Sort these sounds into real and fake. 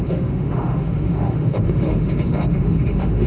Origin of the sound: fake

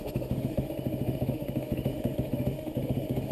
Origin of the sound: fake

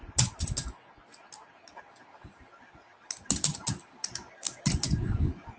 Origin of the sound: real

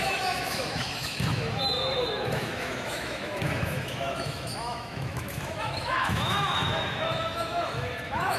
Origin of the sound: fake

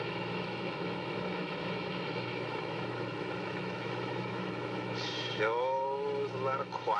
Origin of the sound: fake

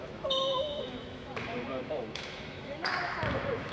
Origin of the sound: fake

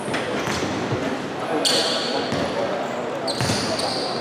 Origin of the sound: real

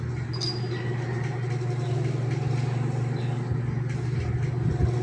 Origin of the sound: real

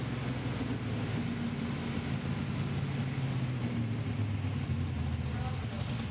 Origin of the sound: real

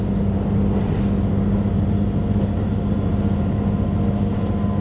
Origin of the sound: real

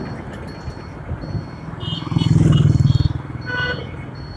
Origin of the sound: real